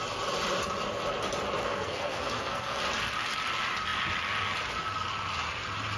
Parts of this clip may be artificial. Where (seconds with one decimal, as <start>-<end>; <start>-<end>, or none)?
1.6-2.8